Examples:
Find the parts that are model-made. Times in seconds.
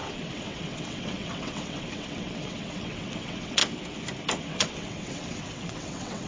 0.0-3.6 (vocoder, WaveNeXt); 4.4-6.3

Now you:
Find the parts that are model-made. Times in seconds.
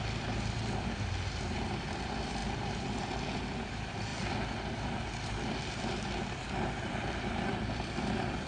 0.0-8.5 (vocoder, BigVGAN v2)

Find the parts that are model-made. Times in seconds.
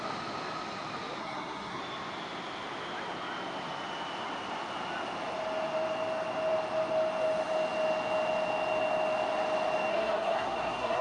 1.2-1.8 (codec, SNAC); 9.9-11.0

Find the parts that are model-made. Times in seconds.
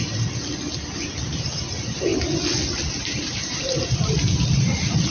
0.0-0.5 (vocoder, BigVGAN v2); 1.2-2.1; 3.0-5.1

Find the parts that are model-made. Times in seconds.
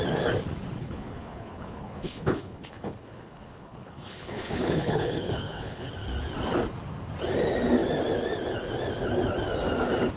0.8-5.9 (codec, HILCodec)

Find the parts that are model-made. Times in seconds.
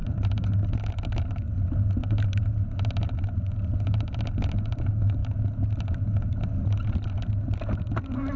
none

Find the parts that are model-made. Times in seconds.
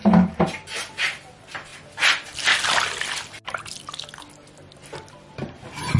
0.0-1.7 (vocoder, BigVGAN v2); 5.3-6.0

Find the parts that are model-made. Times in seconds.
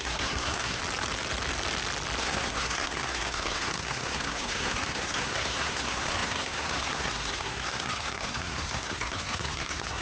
0.0-0.8 (codec, SNAC); 2.2-10.0